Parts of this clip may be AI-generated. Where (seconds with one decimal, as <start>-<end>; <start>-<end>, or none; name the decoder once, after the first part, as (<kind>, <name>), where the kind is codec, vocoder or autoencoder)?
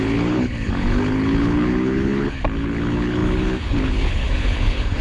0.0-5.0 (codec, HILCodec)